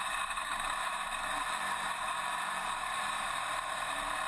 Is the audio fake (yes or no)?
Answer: yes